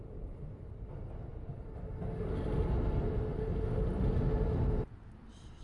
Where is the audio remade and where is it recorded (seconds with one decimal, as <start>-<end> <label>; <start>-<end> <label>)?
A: 0.0-5.6 recorded